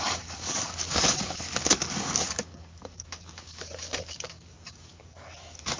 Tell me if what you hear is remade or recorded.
remade